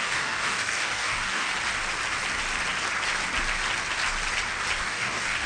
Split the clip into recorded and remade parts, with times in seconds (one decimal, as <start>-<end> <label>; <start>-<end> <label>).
0.0-1.5 remade; 1.5-4.8 recorded; 4.8-5.5 remade